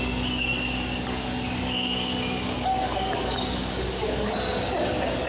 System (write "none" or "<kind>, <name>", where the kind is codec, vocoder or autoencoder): codec, DAC